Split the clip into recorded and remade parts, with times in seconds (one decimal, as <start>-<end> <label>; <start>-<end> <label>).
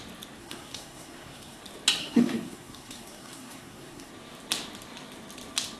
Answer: 0.0-0.4 recorded; 0.4-1.6 remade; 1.6-2.0 recorded; 2.0-4.1 remade; 4.1-5.8 recorded